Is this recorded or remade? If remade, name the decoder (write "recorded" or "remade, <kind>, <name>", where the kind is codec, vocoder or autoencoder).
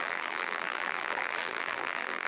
remade, vocoder, BigVGAN v2